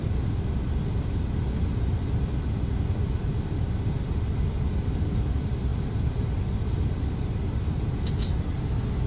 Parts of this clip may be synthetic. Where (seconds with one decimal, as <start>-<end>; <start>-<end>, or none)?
5.7-6.4